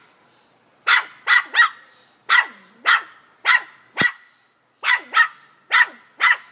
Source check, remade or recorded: recorded